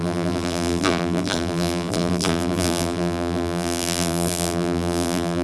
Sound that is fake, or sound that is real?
fake